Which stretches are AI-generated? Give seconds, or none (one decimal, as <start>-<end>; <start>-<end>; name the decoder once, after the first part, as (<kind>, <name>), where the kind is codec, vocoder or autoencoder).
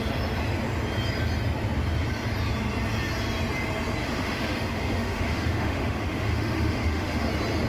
4.0-7.3 (autoencoder, DAC-VAE)